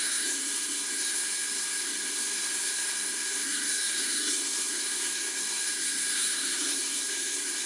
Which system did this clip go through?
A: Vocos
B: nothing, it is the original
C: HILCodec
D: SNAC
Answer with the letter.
D